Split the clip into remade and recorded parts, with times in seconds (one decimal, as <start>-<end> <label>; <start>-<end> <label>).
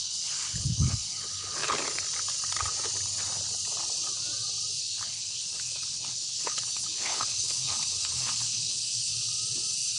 0.0-1.6 remade; 1.6-4.8 recorded; 4.8-9.1 remade; 9.1-10.0 recorded